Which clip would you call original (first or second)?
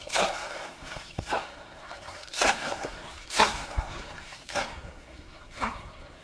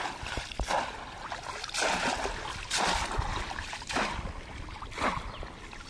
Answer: second